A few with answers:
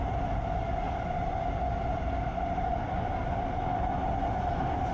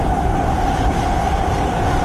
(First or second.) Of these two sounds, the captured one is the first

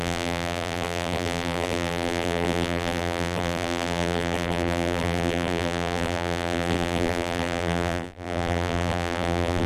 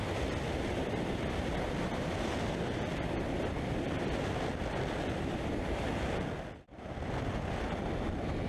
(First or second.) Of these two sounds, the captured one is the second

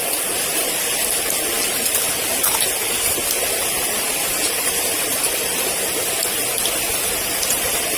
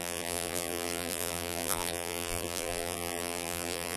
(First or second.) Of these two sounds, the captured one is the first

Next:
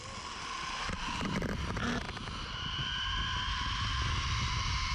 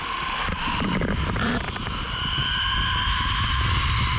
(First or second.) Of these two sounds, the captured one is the first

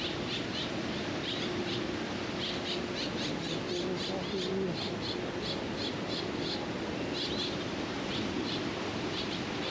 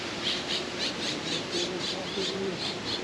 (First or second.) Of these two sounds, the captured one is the first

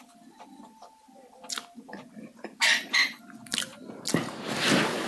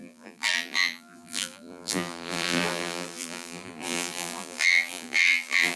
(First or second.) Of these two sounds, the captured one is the first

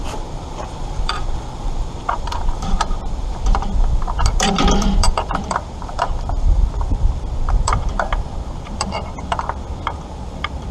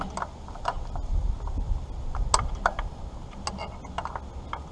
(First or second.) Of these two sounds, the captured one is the second